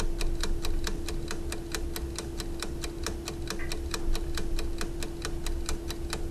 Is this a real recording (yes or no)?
yes